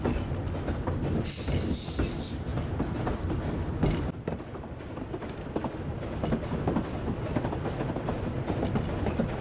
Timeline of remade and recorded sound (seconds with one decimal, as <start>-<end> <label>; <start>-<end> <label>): 0.0-9.4 recorded